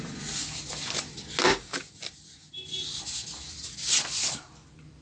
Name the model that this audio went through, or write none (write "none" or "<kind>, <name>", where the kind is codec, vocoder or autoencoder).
none